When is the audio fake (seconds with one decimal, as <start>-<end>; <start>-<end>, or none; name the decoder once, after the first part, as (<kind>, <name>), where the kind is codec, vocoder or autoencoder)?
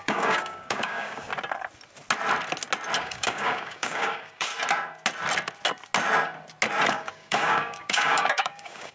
0.0-1.3 (codec, DAC); 3.0-4.5; 6.9-8.9